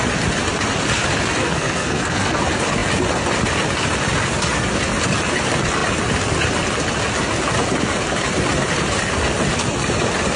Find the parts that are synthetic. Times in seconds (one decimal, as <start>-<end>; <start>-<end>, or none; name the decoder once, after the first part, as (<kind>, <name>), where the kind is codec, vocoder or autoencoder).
1.4-2.4 (codec, SNAC)